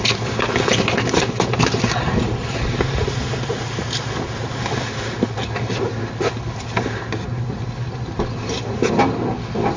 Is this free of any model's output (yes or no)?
yes